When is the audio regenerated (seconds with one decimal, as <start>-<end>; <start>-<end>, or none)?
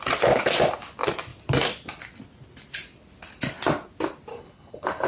4.3-5.1